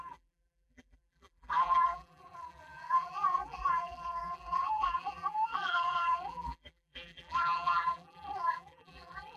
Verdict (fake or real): fake